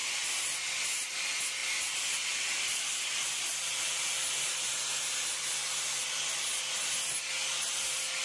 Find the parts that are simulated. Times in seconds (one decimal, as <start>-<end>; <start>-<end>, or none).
1.6-6.1